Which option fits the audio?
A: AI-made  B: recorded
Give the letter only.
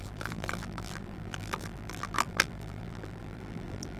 A